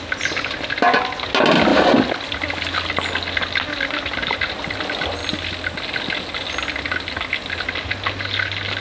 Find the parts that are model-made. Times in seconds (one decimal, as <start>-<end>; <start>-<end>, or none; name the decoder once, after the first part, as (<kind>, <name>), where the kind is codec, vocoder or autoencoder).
none